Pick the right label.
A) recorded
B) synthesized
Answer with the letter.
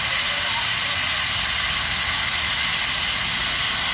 A